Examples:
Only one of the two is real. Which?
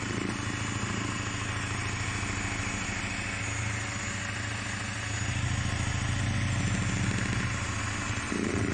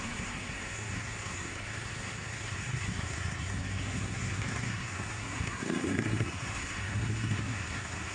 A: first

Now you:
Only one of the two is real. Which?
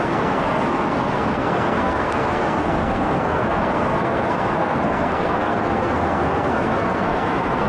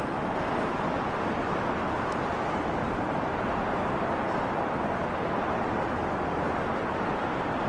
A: second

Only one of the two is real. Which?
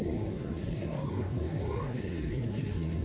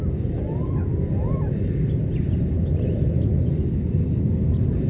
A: second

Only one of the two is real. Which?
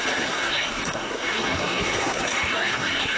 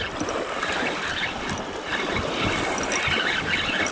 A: second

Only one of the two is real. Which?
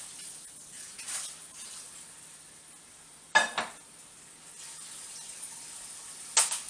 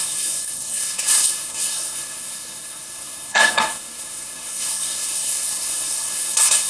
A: first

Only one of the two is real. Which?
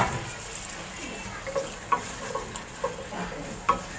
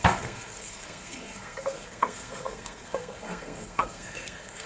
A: first